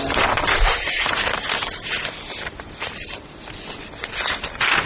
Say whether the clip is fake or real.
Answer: real